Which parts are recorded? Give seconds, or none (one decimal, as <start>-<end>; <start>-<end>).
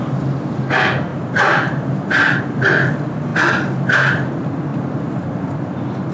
0.0-6.1